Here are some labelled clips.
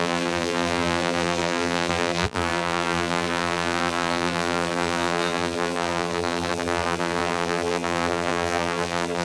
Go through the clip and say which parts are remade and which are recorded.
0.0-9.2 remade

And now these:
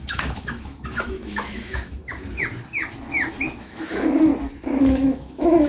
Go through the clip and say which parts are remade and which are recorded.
0.0-2.0 remade; 2.0-3.3 recorded; 3.3-4.3 remade; 4.3-4.8 recorded; 4.8-5.7 remade

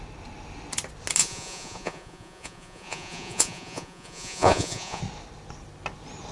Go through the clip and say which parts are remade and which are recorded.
0.0-1.2 recorded; 1.2-5.0 remade; 5.0-6.3 recorded

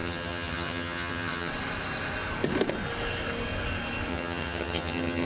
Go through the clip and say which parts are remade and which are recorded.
0.0-1.5 remade; 1.5-4.1 recorded; 4.1-5.3 remade

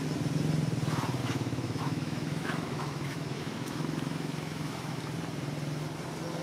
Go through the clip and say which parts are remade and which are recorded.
0.0-1.2 recorded; 1.2-5.0 remade; 5.0-6.4 recorded

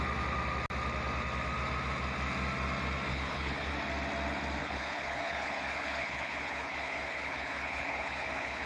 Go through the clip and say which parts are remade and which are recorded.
0.0-3.1 recorded; 3.1-3.7 remade; 3.7-4.6 recorded; 4.6-8.7 remade

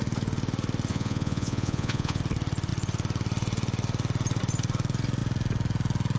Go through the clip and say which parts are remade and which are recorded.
0.0-0.9 recorded; 0.9-2.2 remade; 2.2-6.2 recorded

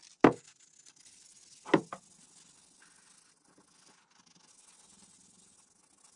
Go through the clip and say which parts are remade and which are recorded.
0.0-6.2 recorded